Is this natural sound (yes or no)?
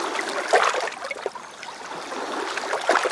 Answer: yes